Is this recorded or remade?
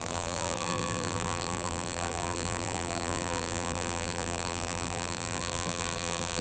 remade